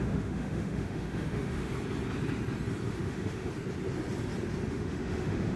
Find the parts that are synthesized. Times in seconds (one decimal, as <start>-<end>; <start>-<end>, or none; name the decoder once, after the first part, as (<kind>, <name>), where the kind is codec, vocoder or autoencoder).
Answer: 0.0-1.7 (autoencoder, DAC-VAE); 2.9-3.5; 4.7-5.6